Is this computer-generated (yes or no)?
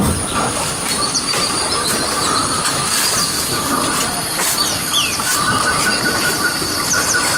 yes